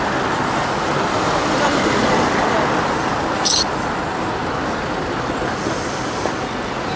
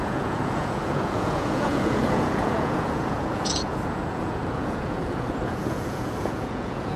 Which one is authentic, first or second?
first